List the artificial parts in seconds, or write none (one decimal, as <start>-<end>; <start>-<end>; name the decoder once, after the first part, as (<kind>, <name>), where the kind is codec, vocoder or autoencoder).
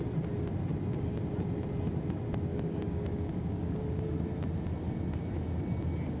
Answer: 2.5-4.0 (codec, DAC)